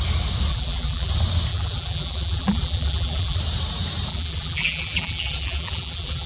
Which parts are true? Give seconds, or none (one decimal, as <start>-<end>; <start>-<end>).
0.0-0.5; 1.1-1.5; 3.4-4.1